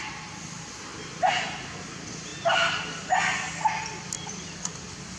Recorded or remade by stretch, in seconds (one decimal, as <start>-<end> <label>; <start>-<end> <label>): 0.0-5.2 recorded